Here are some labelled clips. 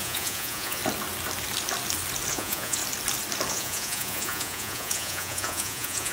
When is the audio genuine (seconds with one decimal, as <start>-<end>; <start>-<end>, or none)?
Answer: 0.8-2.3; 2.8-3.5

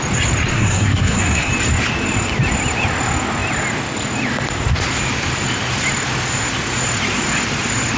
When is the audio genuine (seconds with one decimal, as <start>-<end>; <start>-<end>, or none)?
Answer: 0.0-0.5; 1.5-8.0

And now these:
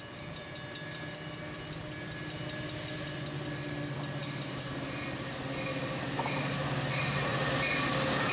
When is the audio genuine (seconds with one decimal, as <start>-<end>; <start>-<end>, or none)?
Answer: 0.0-8.3